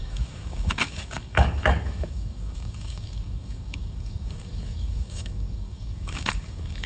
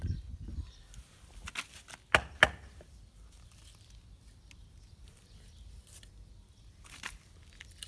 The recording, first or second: second